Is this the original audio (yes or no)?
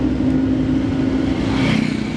yes